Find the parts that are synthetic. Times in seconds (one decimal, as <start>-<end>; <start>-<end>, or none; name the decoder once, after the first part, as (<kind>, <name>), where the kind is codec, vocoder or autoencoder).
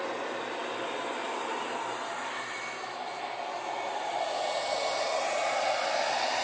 none